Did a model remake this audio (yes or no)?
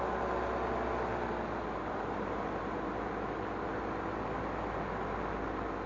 no